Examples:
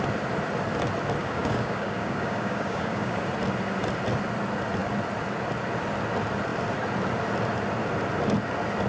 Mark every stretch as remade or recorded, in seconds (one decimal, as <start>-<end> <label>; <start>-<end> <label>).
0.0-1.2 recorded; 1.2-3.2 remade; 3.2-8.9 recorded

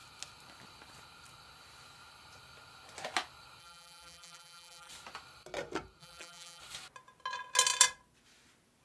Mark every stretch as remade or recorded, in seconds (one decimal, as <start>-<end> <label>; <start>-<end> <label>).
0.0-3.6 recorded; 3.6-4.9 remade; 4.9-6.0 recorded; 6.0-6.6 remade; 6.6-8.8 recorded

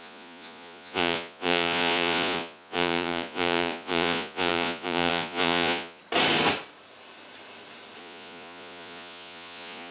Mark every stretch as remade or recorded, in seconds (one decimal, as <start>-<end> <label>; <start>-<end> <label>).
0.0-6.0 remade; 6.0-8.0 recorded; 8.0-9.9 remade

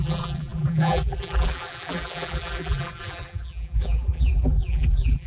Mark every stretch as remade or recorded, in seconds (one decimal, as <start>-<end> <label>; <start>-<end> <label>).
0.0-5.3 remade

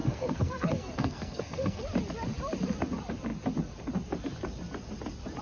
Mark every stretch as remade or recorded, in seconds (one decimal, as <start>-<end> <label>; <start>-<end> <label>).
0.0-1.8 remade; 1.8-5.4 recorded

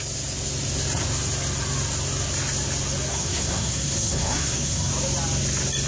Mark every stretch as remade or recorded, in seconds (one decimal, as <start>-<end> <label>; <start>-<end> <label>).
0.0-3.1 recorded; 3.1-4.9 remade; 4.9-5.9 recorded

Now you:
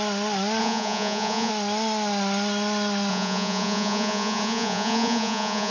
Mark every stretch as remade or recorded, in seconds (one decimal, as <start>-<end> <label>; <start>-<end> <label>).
0.0-0.6 recorded; 0.6-1.5 remade; 1.5-3.1 recorded; 3.1-5.7 remade